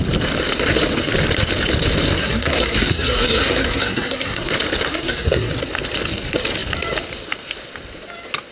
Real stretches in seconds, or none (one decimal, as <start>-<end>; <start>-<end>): 0.0-2.2; 4.5-4.9; 5.5-8.5